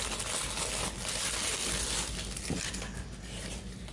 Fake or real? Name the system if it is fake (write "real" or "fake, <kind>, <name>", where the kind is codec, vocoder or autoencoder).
real